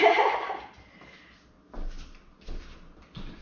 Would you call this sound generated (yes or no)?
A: no